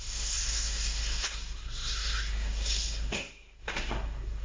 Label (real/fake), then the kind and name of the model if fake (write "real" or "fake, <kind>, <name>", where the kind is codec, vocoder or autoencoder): fake, codec, SNAC